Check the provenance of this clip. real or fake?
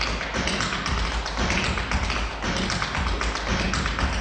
real